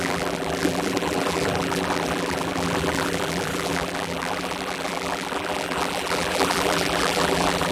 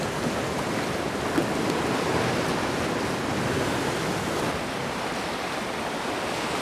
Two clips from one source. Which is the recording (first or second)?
second